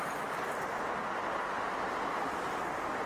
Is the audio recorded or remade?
recorded